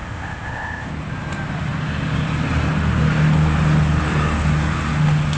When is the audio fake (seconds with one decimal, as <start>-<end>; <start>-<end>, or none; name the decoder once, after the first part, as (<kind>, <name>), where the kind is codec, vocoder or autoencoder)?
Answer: 0.0-0.9 (codec, ZipCodec)